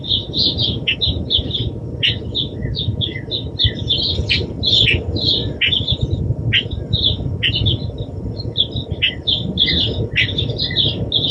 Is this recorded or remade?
recorded